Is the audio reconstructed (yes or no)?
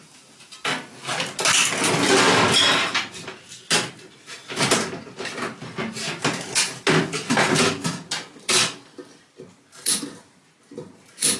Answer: no